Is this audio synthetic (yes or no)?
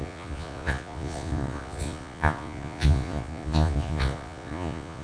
yes